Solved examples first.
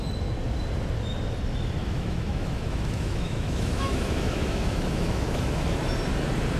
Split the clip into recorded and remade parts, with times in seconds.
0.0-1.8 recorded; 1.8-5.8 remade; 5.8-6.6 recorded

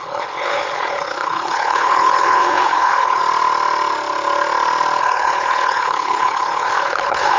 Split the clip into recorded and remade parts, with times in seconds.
0.0-3.2 remade; 3.2-5.0 recorded; 5.0-7.4 remade

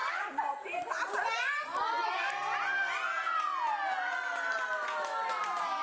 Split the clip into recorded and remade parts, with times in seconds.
0.0-5.8 recorded

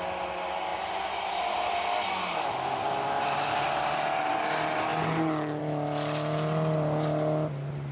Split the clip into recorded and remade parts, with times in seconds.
0.0-7.9 recorded

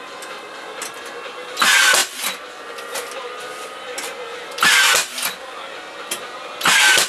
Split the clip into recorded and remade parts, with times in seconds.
0.0-7.1 recorded

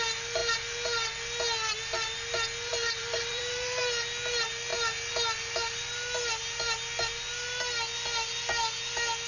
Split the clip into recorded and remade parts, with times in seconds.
0.0-2.7 recorded; 2.7-3.8 remade; 3.8-9.3 recorded

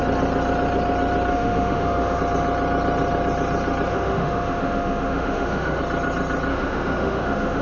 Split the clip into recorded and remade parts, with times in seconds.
0.0-1.3 recorded; 1.3-2.2 remade; 2.2-3.9 recorded; 3.9-5.8 remade; 5.8-6.5 recorded; 6.5-7.6 remade

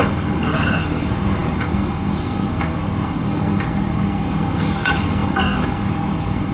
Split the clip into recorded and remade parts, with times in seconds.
0.0-6.5 remade